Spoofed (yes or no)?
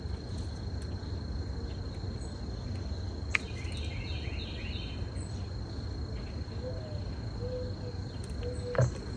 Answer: no